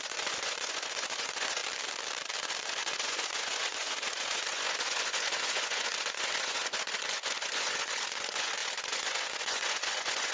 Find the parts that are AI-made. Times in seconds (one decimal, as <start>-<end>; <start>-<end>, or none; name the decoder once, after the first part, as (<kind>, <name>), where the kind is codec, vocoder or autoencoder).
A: 0.0-1.6 (vocoder, Vocos); 2.4-10.3